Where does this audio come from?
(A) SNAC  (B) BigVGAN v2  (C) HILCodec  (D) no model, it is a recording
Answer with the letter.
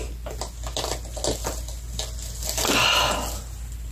D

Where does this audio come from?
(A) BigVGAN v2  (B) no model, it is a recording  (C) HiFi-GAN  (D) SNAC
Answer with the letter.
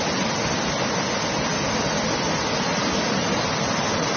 B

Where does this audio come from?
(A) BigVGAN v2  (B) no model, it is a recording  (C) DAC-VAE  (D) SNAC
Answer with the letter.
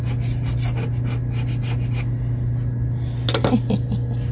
B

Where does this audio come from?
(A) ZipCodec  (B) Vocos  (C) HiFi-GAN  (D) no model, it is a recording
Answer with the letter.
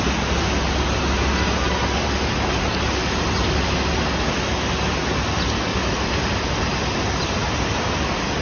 D